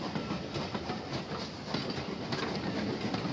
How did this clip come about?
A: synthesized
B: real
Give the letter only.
B